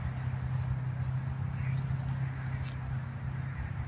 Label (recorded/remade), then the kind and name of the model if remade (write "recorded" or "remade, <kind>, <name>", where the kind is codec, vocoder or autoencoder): recorded